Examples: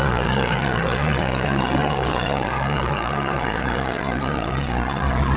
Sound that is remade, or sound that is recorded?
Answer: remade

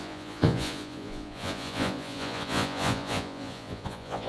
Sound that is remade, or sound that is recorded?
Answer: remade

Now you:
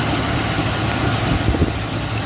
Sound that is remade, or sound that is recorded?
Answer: recorded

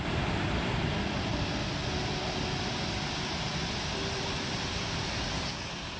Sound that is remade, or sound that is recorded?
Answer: recorded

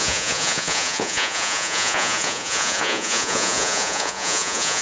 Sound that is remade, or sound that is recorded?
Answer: remade